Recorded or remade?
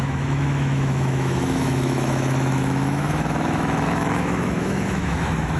remade